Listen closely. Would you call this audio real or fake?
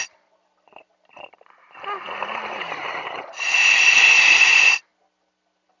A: real